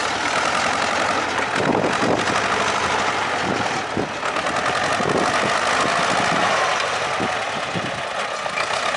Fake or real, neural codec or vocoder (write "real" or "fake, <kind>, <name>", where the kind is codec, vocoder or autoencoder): real